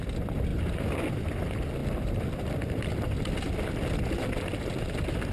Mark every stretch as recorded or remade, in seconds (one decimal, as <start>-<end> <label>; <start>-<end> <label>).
0.0-1.8 recorded; 1.8-3.2 remade; 3.2-5.3 recorded